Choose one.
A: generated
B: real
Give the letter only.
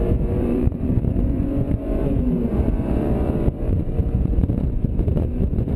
A